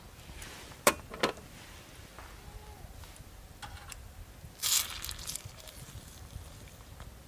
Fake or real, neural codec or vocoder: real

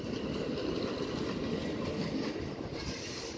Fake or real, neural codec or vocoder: real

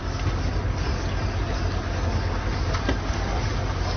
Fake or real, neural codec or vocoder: real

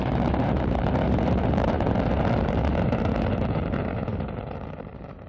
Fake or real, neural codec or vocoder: fake, vocoder, BigVGAN v2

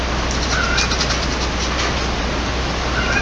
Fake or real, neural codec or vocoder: real